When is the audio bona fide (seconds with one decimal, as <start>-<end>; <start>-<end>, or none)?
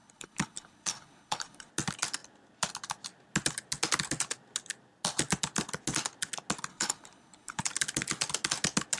1.7-6.7; 7.6-9.0